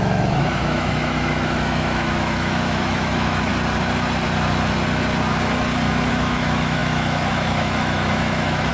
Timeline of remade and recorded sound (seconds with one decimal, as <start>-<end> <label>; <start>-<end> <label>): 0.0-3.5 remade; 3.5-6.1 recorded; 6.1-8.7 remade